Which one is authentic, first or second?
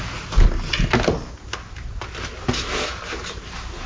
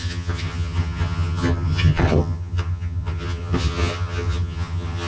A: first